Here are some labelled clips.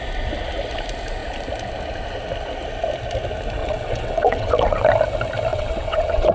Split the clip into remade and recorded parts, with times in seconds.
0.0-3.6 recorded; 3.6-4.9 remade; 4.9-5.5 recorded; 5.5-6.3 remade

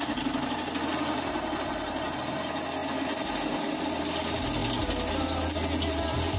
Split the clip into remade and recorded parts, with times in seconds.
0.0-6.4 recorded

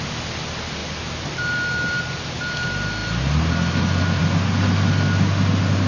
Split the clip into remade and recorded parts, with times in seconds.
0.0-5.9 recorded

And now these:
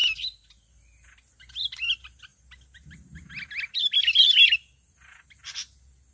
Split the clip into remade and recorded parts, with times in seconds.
0.0-6.1 recorded

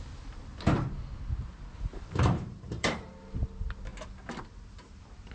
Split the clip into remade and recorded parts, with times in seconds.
0.0-1.9 recorded; 1.9-3.1 remade; 3.1-5.3 recorded